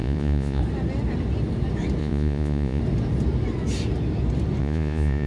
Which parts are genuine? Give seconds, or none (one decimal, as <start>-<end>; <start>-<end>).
0.6-2.0; 2.8-4.6